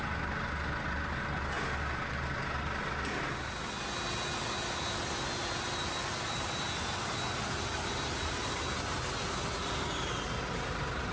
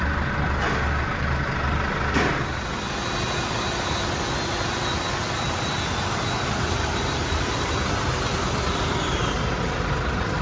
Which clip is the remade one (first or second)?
second